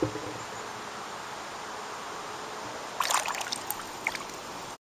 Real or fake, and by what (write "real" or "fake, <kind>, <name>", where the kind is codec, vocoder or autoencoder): real